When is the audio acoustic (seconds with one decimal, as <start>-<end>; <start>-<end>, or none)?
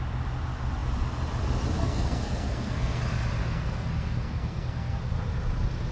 0.0-1.8; 3.0-3.4; 5.0-5.9